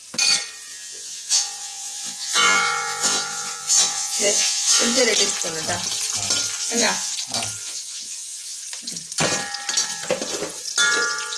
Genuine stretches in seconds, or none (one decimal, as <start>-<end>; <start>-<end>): 0.0-0.7; 5.0-6.6; 7.1-7.6; 8.6-11.4